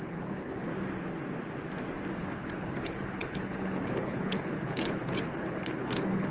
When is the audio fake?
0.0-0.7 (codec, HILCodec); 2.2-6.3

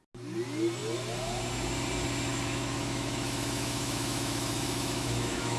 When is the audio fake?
2.3-5.6 (autoencoder, DAC-VAE)

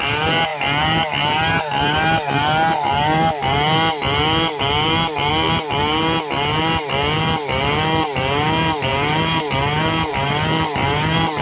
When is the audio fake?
none

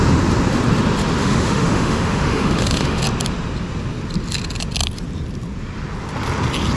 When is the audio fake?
1.2-3.0 (autoencoder, DAC-VAE)

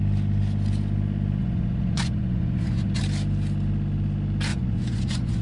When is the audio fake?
1.4-3.0 (vocoder, Vocos); 4.5-5.4